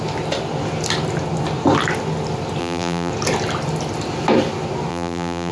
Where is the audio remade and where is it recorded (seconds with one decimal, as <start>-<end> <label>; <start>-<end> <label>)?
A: 0.0-2.6 recorded; 2.6-3.1 remade; 3.1-4.9 recorded; 4.9-5.5 remade

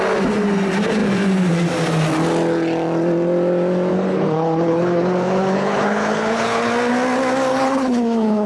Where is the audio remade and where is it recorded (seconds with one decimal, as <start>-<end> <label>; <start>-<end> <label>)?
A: 0.0-3.9 recorded; 3.9-6.7 remade; 6.7-7.5 recorded; 7.5-8.5 remade

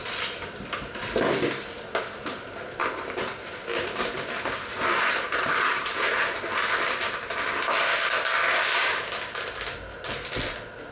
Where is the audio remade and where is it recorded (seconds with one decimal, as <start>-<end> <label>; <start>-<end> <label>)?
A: 0.0-2.8 recorded; 2.8-6.5 remade; 6.5-10.9 recorded

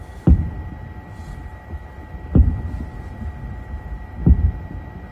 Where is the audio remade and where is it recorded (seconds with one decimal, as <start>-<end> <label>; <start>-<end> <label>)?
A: 0.0-5.1 recorded